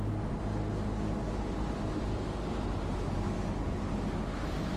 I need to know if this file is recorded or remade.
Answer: recorded